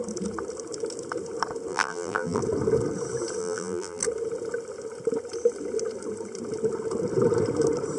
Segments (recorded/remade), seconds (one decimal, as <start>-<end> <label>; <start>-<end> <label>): 0.0-1.7 recorded; 1.7-2.4 remade; 2.4-3.4 recorded; 3.4-4.0 remade; 4.0-8.0 recorded